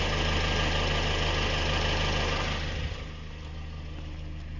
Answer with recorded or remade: recorded